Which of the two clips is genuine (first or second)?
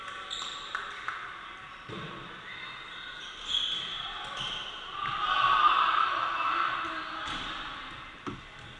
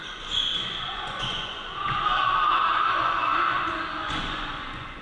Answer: first